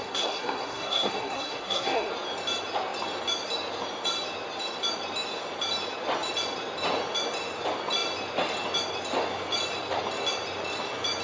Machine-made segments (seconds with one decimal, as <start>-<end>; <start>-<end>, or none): 0.0-2.1